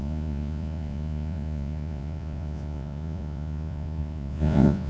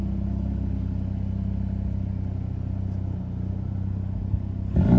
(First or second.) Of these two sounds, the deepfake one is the first